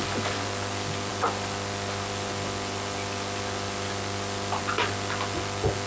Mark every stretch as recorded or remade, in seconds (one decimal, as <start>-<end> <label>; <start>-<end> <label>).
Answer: 0.0-5.9 recorded